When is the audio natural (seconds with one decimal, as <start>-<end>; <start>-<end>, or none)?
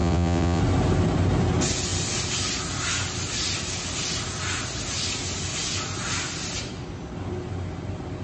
0.6-8.2